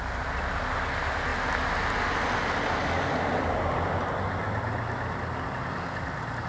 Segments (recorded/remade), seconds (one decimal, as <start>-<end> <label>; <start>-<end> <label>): 0.0-6.5 recorded